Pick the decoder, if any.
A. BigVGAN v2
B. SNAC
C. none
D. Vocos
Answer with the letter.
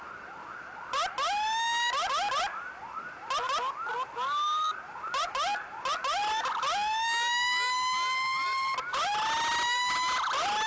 C